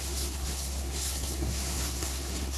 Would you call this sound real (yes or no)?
no